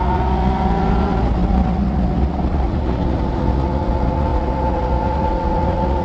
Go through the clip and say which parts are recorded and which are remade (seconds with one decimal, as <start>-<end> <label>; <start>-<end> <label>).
0.0-6.0 remade